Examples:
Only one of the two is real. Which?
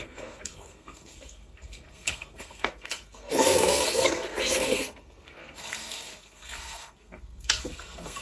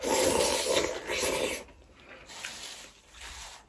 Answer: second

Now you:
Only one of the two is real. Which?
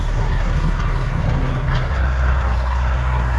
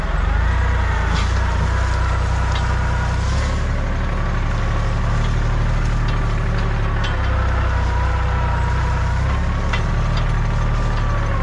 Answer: second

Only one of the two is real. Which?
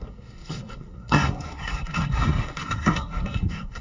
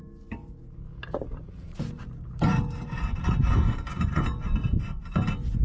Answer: second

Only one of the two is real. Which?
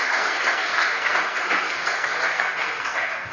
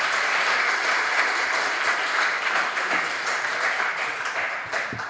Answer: second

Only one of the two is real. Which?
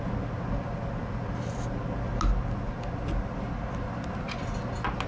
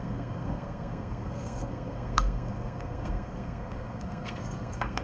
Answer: first